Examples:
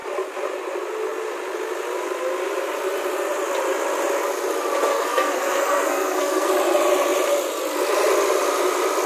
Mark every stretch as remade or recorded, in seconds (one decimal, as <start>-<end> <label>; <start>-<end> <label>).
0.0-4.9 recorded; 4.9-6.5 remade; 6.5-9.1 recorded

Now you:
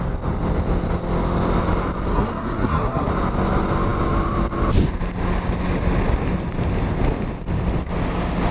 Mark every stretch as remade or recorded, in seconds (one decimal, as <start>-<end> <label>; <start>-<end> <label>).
0.0-2.1 recorded; 2.1-3.1 remade; 3.1-8.5 recorded

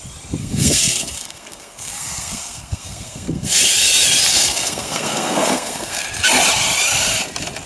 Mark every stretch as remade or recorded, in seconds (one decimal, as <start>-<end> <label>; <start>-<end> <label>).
0.0-0.4 recorded; 0.4-3.6 remade; 3.6-4.3 recorded; 4.3-6.0 remade; 6.0-7.7 recorded

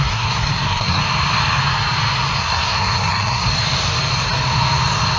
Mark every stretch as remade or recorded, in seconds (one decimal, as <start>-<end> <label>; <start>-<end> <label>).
0.0-1.0 remade; 1.0-2.4 recorded; 2.4-3.5 remade; 3.5-5.2 recorded

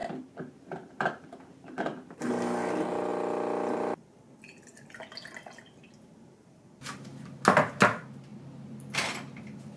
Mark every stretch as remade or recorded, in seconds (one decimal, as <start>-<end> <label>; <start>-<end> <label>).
0.0-9.8 recorded

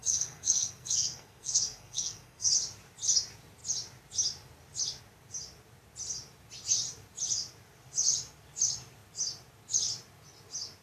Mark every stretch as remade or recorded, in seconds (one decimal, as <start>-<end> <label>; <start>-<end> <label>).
0.0-2.5 remade; 2.5-10.8 recorded

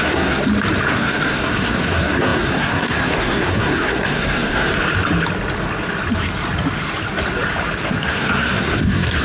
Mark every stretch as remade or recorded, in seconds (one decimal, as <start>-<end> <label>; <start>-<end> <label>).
0.0-0.4 remade; 0.4-0.9 recorded; 0.9-4.7 remade; 4.7-7.9 recorded; 7.9-9.2 remade

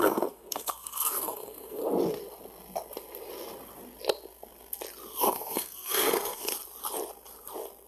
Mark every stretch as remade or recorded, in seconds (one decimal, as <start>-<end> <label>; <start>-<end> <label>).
0.0-1.8 remade; 1.8-5.2 recorded; 5.2-6.5 remade; 6.5-7.9 recorded